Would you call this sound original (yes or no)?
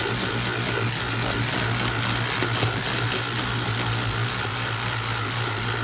yes